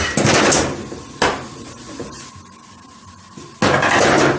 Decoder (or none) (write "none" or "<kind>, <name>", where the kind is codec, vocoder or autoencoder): none